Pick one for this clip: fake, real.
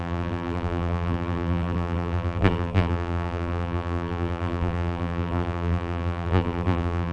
fake